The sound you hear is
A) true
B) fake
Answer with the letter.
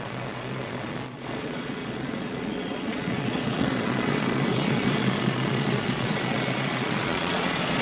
B